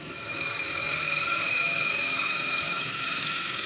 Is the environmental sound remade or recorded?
remade